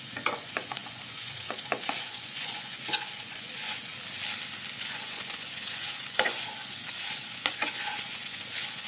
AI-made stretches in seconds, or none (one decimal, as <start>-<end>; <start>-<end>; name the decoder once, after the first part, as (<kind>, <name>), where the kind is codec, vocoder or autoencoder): 0.0-3.9 (vocoder, Vocos); 4.8-8.9